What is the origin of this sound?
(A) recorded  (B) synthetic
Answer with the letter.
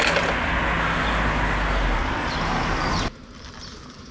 A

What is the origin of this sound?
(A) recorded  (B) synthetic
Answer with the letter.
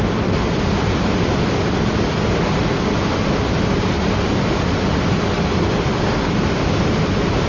A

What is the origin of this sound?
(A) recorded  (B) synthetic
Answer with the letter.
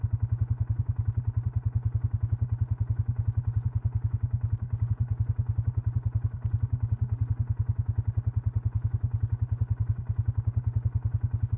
A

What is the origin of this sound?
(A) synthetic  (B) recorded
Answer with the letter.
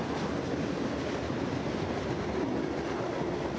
B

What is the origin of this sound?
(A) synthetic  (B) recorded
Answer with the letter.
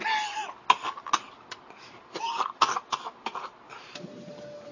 B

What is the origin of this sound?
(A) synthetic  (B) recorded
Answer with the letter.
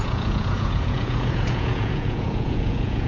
A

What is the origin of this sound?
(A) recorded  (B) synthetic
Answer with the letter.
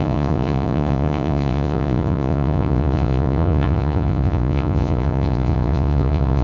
B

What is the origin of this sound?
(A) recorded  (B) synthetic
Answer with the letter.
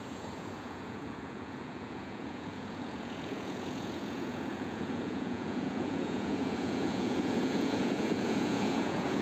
B